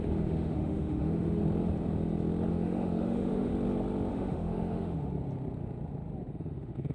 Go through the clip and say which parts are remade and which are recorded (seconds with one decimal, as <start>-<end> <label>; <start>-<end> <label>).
0.0-1.4 remade; 1.4-2.5 recorded; 2.5-3.5 remade; 3.5-4.1 recorded; 4.1-5.1 remade; 5.1-6.3 recorded; 6.3-6.9 remade